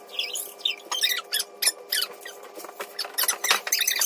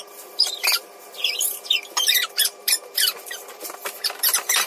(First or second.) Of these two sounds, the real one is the first